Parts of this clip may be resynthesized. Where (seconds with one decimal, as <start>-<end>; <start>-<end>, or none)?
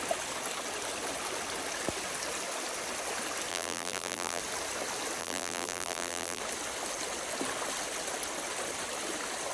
3.5-4.4; 5.2-6.4